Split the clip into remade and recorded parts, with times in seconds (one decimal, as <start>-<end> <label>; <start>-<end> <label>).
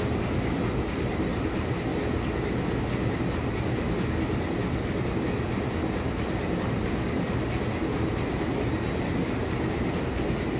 0.0-10.6 recorded